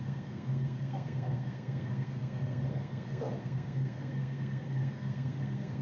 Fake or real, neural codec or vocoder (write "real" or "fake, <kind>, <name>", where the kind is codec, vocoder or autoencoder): fake, codec, SNAC